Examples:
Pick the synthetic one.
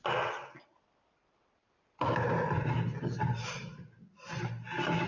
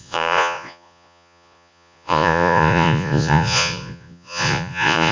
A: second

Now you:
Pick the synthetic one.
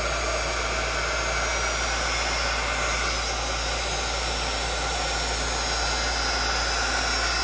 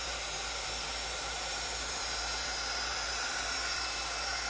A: second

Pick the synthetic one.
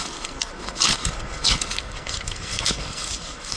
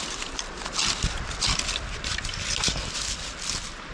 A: first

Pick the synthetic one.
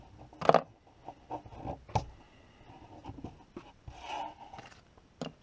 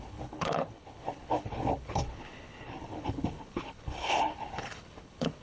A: second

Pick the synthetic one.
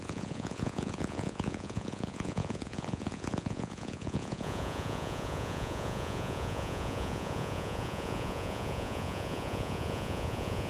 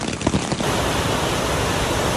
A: first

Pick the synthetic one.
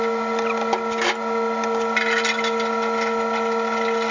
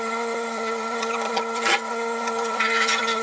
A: second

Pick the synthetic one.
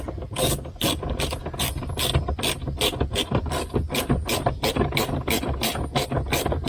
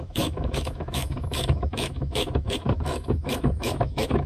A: second